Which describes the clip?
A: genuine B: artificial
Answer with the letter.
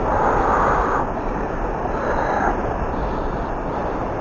A